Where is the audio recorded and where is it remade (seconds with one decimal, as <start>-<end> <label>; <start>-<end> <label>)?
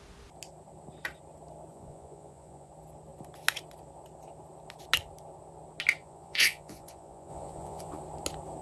0.0-1.7 recorded; 1.7-2.7 remade; 2.7-6.0 recorded; 6.0-8.0 remade; 8.0-8.6 recorded